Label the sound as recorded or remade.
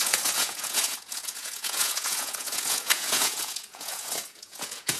remade